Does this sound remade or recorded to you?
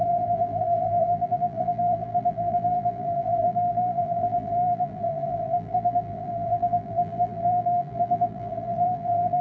remade